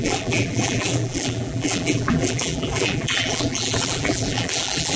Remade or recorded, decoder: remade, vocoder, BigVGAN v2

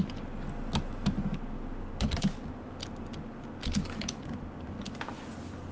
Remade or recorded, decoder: recorded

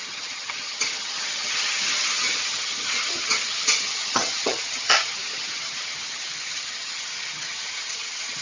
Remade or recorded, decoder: remade, vocoder, HiFi-GAN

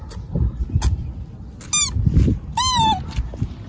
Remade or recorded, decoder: recorded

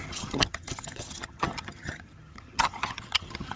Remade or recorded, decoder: remade, vocoder, HiFi-GAN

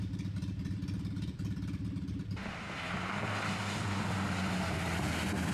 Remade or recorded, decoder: recorded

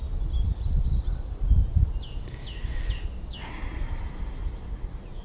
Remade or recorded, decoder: recorded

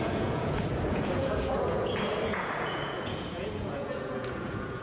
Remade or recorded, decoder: remade, vocoder, Vocos